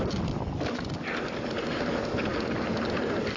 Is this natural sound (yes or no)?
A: yes